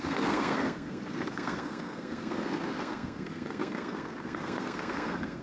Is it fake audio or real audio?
fake